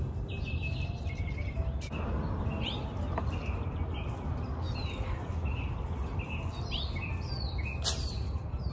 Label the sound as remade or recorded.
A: recorded